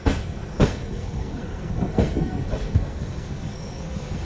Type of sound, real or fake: fake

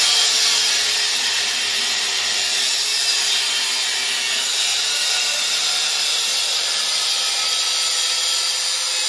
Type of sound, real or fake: real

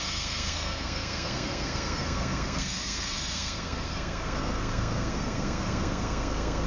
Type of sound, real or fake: fake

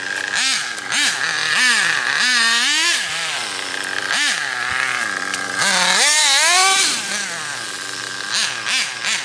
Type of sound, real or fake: real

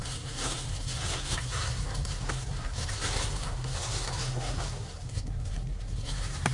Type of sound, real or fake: fake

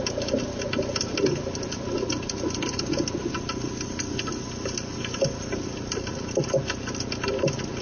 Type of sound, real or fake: real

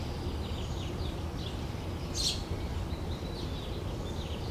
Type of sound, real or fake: real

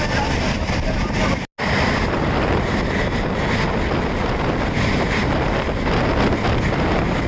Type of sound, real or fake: real